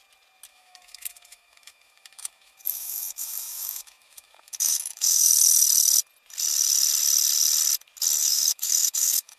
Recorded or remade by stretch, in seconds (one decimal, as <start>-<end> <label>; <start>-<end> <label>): 0.0-0.5 recorded; 0.5-5.3 remade; 5.3-8.2 recorded; 8.2-9.4 remade